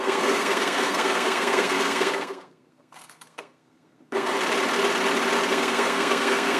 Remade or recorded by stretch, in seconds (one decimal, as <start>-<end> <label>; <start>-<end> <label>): 0.0-4.3 remade; 4.3-5.5 recorded; 5.5-6.6 remade